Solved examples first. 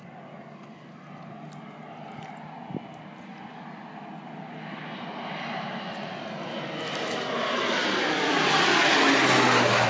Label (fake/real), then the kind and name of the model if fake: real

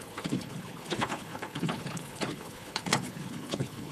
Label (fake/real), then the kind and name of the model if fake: fake, codec, HILCodec